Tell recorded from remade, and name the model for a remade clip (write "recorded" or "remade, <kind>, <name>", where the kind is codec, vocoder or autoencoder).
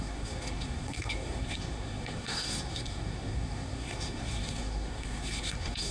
remade, codec, SNAC